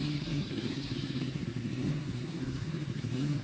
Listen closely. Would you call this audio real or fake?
fake